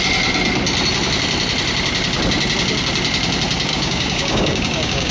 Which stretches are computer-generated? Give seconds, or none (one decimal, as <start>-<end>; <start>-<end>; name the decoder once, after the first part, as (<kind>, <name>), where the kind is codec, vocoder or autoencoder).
3.7-5.1 (codec, DAC)